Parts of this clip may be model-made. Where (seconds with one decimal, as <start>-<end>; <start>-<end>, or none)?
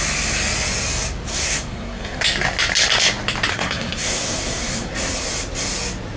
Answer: 1.3-2.2; 3.5-4.9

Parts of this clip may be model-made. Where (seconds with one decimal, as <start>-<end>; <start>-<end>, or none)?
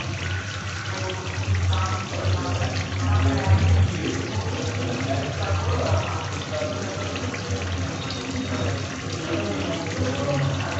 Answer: 4.0-5.5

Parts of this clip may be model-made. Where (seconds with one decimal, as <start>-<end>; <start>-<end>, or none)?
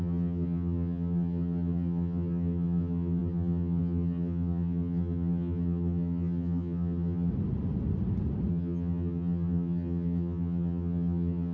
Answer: 0.0-7.3; 8.5-11.5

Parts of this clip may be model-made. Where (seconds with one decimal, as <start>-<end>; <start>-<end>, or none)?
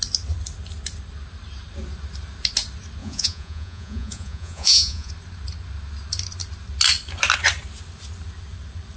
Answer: 3.0-5.1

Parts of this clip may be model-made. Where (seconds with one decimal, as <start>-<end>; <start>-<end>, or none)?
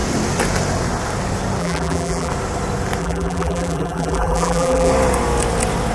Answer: 1.6-2.3; 3.0-4.9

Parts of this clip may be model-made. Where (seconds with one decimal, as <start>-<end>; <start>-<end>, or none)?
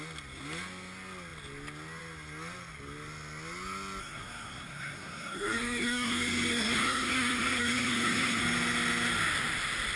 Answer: 4.0-8.4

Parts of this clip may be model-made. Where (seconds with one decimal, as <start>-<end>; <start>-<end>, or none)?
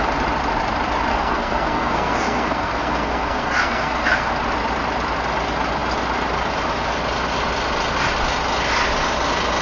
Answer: 1.1-4.3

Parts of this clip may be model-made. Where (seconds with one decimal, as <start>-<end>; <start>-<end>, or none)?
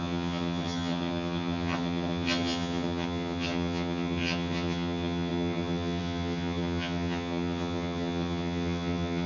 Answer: 0.0-9.3